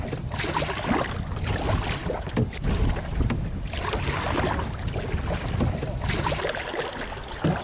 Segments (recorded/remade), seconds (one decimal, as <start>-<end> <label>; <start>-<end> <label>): 0.0-7.6 recorded